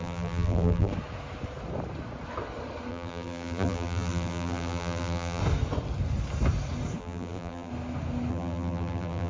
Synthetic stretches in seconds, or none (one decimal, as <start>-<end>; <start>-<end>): 0.0-0.9; 2.9-5.4; 7.0-7.7; 8.3-9.3